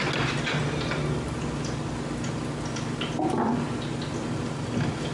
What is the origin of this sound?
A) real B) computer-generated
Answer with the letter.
A